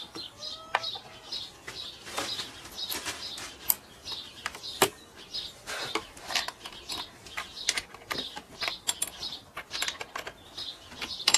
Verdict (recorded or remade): recorded